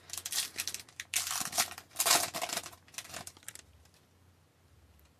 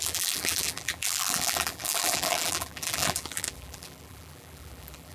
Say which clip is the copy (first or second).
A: second